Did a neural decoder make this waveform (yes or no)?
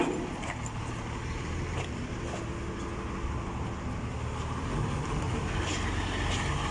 no